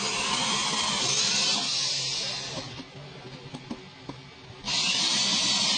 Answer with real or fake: real